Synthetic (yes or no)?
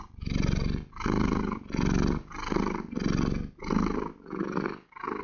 no